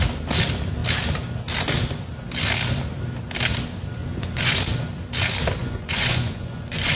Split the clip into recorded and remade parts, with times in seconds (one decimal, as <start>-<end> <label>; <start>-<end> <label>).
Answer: 0.0-4.0 recorded; 4.0-4.5 remade; 4.5-5.6 recorded; 5.6-7.0 remade